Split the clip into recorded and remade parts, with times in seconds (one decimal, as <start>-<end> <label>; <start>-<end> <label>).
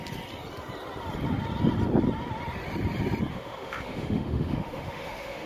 0.0-3.3 recorded; 3.3-5.5 remade